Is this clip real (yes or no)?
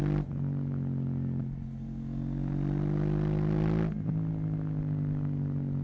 yes